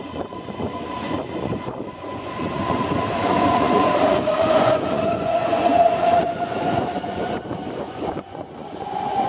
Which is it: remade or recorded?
remade